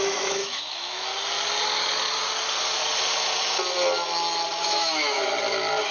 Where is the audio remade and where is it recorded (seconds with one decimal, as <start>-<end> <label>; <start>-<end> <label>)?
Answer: 0.0-1.1 remade; 1.1-4.6 recorded; 4.6-5.2 remade; 5.2-5.9 recorded